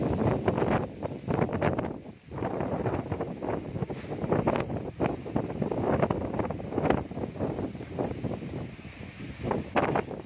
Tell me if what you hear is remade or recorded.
recorded